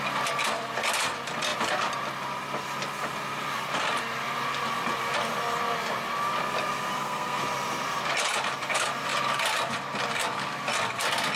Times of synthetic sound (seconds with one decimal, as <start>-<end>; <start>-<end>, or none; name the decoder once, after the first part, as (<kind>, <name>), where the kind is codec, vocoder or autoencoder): 6.9-7.4 (codec, SNAC)